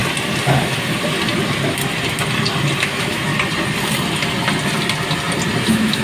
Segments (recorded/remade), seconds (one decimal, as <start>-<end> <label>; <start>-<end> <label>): 0.0-2.8 recorded; 2.8-3.3 remade; 3.3-5.6 recorded; 5.6-6.0 remade